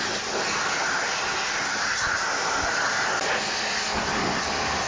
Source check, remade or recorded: recorded